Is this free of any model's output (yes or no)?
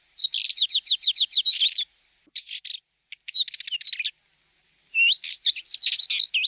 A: yes